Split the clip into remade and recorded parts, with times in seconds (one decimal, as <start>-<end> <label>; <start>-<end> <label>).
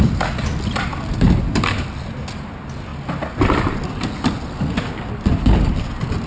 0.0-6.3 recorded